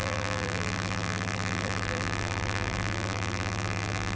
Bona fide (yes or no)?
no